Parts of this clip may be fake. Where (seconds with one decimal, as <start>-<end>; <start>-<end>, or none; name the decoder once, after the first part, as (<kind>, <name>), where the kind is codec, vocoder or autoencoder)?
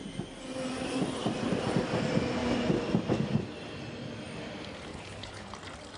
4.9-5.5 (codec, HILCodec)